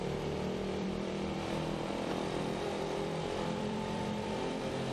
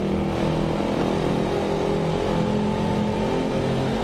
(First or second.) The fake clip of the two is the first